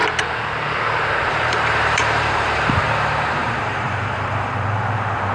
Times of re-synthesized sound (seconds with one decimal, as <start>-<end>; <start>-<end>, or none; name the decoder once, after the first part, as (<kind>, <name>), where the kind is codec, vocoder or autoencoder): 1.3-5.3 (vocoder, BigVGAN v2)